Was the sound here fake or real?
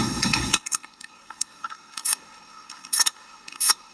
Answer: fake